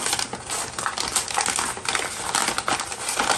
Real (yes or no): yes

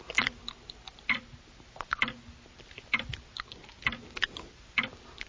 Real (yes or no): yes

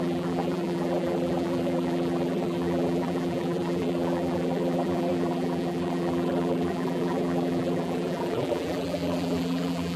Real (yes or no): no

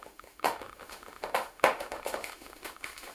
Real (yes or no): no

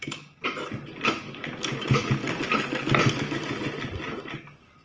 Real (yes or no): yes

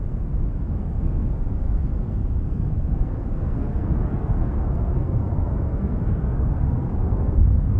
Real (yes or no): no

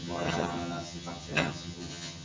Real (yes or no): no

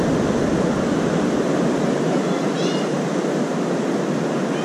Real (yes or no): yes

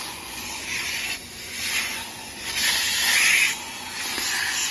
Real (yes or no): no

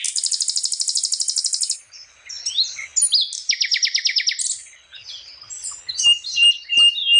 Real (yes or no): yes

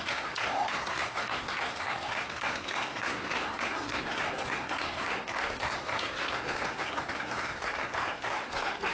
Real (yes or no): no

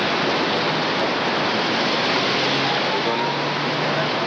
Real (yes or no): yes